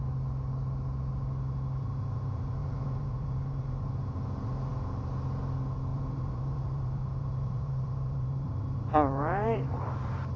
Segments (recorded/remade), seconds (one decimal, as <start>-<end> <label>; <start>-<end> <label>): 0.0-2.6 recorded; 2.6-4.0 remade; 4.0-5.9 recorded; 5.9-9.7 remade; 9.7-10.4 recorded